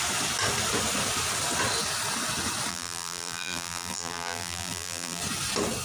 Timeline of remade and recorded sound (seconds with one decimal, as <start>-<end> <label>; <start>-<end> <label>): 0.0-2.7 recorded; 2.7-5.2 remade; 5.2-5.8 recorded